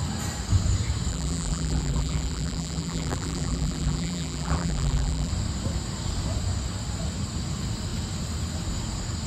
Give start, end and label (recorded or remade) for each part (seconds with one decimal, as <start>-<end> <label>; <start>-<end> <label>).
0.0-1.1 recorded; 1.1-5.3 remade; 5.3-9.3 recorded